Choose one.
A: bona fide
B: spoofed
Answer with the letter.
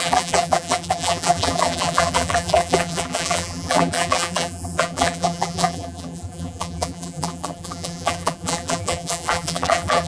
B